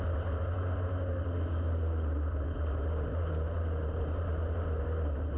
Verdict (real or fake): real